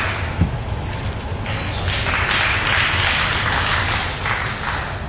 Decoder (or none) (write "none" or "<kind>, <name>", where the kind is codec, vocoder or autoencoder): none